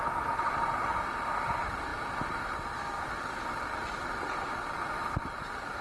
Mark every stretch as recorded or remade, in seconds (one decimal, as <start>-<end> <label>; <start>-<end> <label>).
0.0-5.8 recorded